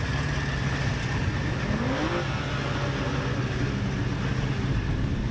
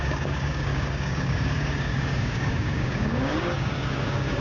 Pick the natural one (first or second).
first